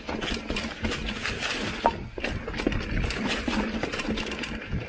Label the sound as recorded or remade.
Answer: recorded